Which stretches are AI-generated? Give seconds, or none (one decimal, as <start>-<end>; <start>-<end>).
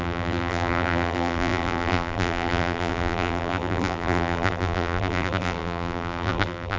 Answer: 0.0-6.8